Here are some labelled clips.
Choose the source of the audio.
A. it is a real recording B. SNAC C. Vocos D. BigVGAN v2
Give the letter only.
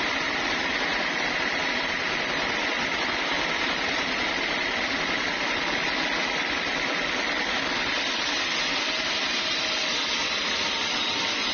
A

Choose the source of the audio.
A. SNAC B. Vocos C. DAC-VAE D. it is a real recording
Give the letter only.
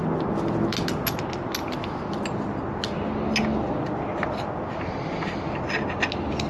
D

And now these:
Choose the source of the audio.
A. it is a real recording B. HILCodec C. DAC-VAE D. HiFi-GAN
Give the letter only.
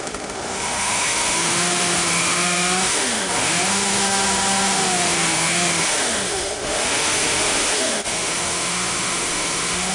C